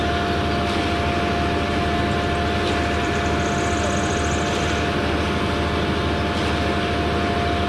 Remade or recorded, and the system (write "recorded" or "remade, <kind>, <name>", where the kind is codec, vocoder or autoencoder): recorded